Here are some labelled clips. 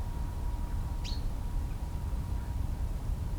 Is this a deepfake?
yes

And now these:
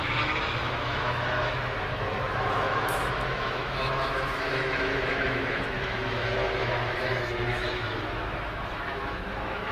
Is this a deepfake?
yes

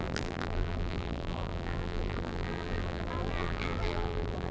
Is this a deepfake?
yes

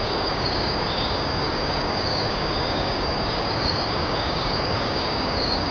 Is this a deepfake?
yes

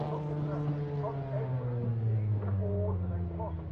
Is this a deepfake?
no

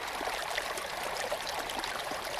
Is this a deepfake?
yes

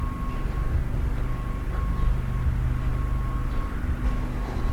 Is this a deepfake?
no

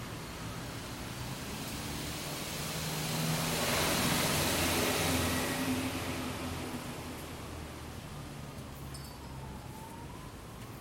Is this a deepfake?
no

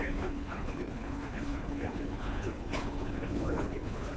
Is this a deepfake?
yes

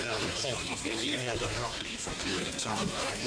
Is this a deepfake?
yes